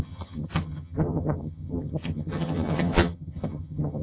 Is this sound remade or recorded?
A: remade